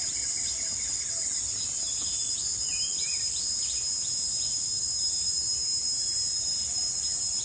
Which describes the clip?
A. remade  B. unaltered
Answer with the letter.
B